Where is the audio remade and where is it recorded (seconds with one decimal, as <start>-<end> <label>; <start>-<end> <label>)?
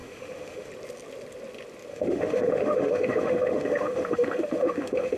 0.0-0.7 remade; 0.7-1.9 recorded; 1.9-5.2 remade